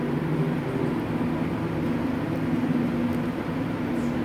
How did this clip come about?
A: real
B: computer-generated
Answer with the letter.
A